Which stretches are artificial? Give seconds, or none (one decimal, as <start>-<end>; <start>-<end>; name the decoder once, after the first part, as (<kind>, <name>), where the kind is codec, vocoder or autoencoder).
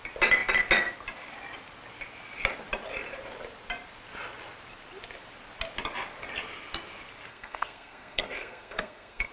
7.3-9.3 (codec, SNAC)